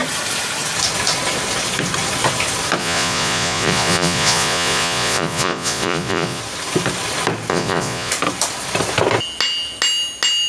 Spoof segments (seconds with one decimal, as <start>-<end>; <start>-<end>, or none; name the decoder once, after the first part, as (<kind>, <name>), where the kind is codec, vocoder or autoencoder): 2.8-6.4 (vocoder, Vocos); 7.5-8.1

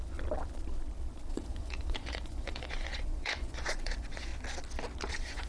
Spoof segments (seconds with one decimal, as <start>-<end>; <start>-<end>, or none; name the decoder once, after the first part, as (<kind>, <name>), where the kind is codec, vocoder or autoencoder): 1.3-4.3 (vocoder, Vocos); 5.1-5.5

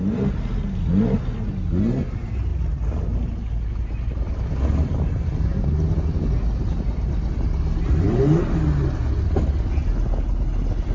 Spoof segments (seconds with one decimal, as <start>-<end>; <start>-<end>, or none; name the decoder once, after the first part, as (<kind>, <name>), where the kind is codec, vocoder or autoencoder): none